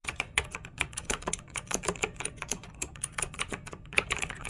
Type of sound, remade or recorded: remade